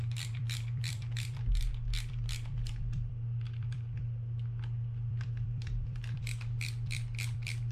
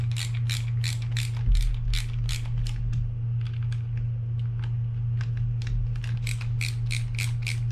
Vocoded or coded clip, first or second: first